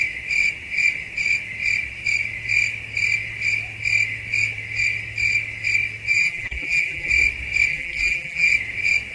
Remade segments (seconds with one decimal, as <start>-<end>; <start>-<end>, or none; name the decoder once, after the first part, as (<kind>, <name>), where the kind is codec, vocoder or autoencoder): 6.1-7.1 (vocoder, BigVGAN v2); 7.7-8.5